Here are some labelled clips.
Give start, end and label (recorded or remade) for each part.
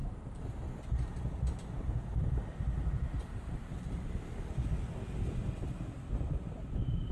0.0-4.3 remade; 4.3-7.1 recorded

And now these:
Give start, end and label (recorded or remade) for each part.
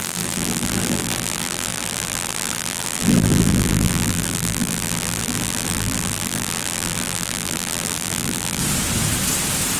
0.0-8.6 remade; 8.6-9.8 recorded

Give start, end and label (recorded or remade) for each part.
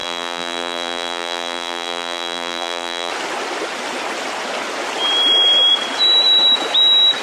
0.0-3.1 remade; 3.1-7.2 recorded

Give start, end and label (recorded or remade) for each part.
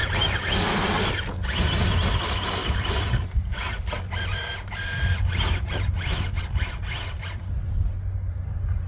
0.0-2.6 recorded; 2.6-6.7 remade; 6.7-8.9 recorded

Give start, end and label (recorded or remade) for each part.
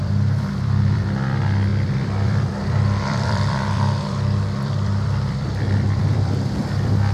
0.0-7.1 remade